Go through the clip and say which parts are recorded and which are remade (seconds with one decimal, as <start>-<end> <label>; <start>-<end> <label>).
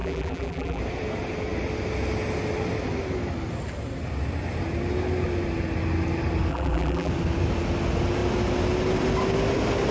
0.0-0.8 remade; 0.8-6.5 recorded; 6.5-7.1 remade; 7.1-9.9 recorded